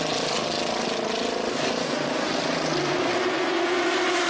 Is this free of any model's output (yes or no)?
yes